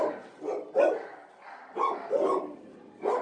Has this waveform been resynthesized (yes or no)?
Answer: no